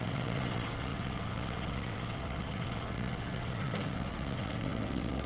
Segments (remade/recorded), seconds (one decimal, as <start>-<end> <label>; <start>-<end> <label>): 0.0-5.3 remade